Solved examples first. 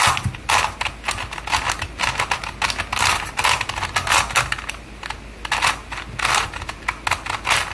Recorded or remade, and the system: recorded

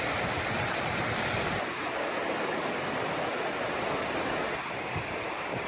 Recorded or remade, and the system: recorded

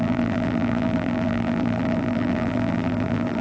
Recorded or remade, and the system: remade, vocoder, BigVGAN v2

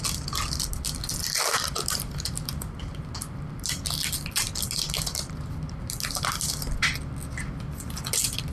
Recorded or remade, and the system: recorded